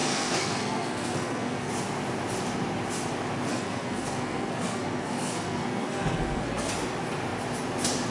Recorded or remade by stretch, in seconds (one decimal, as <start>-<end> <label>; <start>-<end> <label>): 0.0-1.7 remade; 1.7-3.5 recorded; 3.5-6.7 remade; 6.7-8.1 recorded